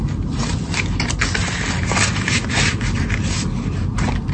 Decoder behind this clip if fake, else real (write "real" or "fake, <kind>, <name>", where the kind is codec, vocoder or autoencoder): real